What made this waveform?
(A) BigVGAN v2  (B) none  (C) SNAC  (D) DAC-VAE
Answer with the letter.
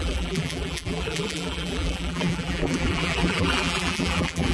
A